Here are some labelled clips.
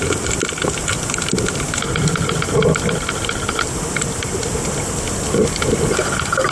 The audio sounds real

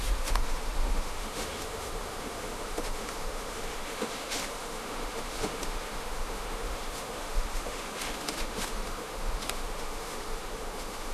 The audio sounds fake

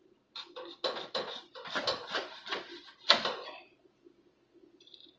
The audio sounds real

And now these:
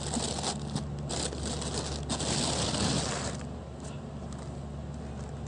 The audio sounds real